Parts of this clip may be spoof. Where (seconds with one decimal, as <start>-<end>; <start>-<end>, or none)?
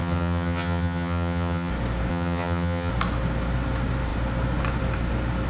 0.0-1.7; 2.1-2.9